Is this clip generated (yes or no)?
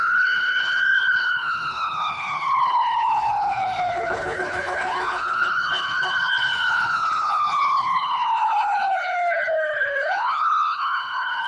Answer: yes